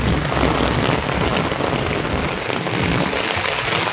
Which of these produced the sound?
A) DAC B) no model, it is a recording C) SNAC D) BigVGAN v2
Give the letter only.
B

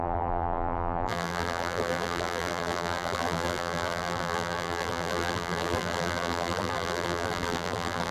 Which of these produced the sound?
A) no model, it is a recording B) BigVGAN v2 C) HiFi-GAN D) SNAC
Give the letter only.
B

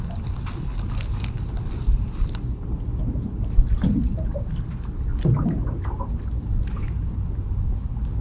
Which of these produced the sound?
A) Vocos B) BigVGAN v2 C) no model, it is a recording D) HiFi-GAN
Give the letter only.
C